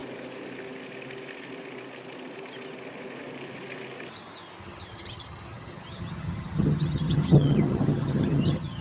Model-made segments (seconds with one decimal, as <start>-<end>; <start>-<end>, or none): 4.6-8.8